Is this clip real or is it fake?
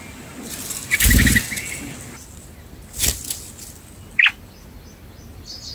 real